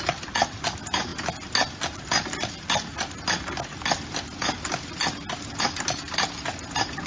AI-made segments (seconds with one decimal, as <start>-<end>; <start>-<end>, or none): none